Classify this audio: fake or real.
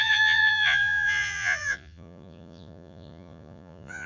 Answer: fake